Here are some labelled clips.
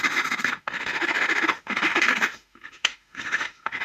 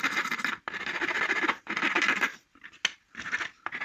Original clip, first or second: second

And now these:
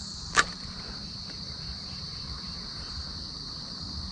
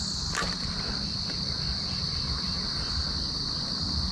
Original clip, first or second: second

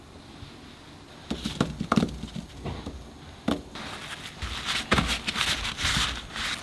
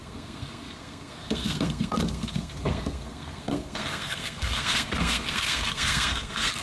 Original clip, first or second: first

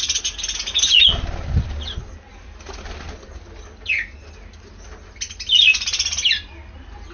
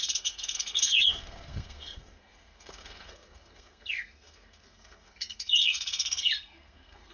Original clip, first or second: first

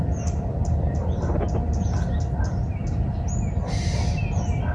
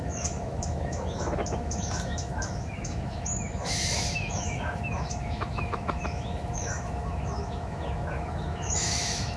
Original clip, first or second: first